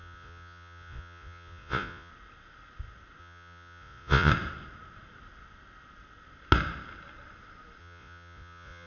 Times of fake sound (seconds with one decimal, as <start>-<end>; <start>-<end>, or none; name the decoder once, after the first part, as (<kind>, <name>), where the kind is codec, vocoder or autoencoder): 0.0-2.1 (vocoder, Vocos); 3.2-4.3; 7.8-8.9